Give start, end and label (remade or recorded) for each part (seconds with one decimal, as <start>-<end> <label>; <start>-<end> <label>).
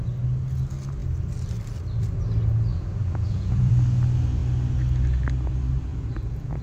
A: 0.0-2.7 recorded; 2.7-3.7 remade; 3.7-5.9 recorded; 5.9-6.6 remade